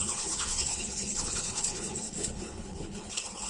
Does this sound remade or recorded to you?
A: remade